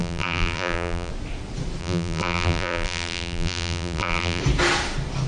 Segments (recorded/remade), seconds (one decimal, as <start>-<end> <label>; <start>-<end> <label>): 0.0-1.1 remade; 1.1-1.8 recorded; 1.8-4.4 remade; 4.4-5.3 recorded